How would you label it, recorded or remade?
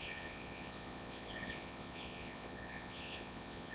remade